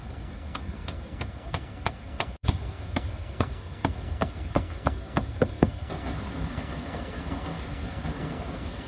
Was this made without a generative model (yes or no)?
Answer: no